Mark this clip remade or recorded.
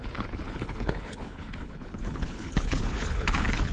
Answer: remade